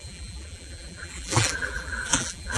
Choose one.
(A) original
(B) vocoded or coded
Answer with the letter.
B